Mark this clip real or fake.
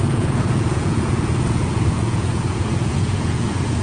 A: fake